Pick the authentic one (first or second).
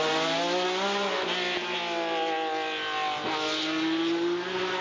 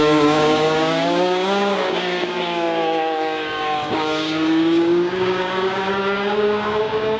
first